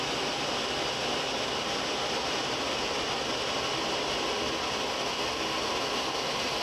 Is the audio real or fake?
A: real